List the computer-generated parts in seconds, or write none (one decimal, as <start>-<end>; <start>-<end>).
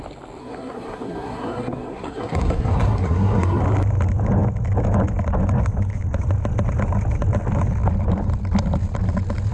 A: 0.4-3.6